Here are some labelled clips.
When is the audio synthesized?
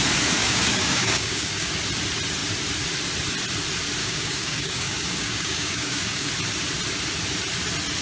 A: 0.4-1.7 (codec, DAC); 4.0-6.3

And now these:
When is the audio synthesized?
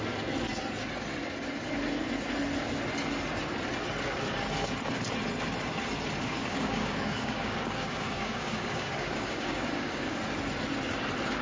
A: 6.2-10.2 (codec, DAC)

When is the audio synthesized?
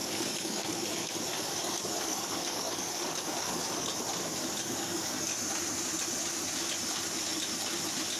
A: 0.0-3.9 (codec, DAC); 4.7-5.3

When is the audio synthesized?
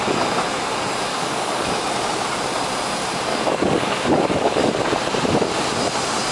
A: 1.1-1.7 (codec, DAC); 3.3-4.7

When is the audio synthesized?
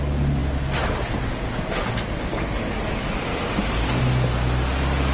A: 2.3-2.9 (codec, DAC); 3.3-4.0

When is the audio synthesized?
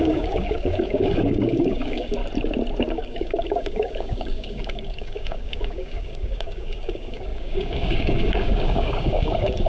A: 0.0-2.2 (codec, DAC); 2.8-9.7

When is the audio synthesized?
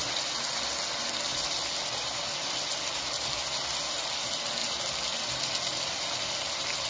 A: none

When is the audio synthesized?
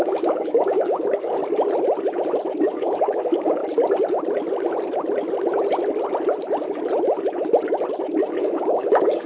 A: 0.0-1.4 (codec, DAC); 2.6-3.6; 8.4-9.3